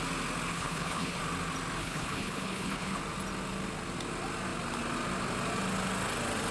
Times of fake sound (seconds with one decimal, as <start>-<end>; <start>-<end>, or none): 0.5-1.2; 1.8-3.0